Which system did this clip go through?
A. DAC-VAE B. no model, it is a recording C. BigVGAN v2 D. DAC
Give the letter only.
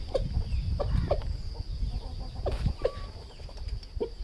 B